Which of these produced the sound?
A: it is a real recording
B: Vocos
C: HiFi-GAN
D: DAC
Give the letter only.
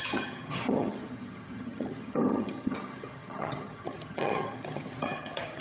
C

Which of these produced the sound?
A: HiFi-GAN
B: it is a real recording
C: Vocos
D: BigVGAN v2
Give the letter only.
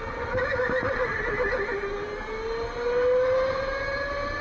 B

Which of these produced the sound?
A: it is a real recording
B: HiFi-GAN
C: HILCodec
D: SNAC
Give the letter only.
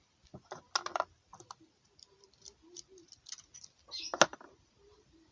A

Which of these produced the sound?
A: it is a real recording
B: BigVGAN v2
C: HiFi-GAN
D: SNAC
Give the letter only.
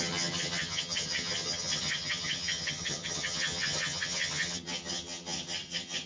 C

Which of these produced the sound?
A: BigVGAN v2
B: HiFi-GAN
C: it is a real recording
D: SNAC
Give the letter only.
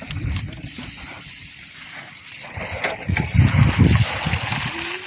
C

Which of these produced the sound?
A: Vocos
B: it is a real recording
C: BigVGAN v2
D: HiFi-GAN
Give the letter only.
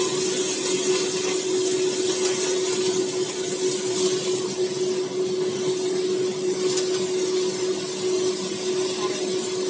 B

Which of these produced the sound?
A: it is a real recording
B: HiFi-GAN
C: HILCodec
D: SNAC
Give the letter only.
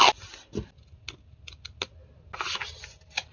A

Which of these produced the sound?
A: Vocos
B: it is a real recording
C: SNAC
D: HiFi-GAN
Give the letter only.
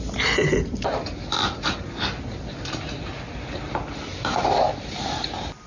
B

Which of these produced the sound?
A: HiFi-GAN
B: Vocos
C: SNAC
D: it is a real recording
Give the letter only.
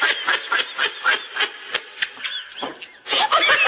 D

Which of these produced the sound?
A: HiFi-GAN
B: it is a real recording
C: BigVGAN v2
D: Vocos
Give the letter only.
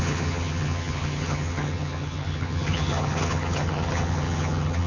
A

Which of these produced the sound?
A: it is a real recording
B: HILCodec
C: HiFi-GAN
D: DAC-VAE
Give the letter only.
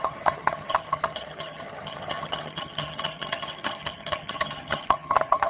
C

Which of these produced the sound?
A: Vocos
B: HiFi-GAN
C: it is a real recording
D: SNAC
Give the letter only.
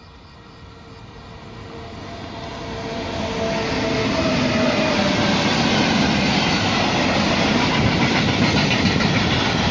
C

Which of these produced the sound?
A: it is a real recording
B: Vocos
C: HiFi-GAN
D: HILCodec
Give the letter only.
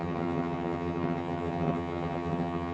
C